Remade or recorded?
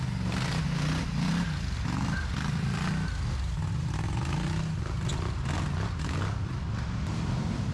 recorded